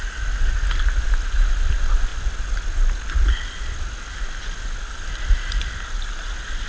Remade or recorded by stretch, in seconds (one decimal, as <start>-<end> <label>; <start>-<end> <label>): 0.0-6.7 recorded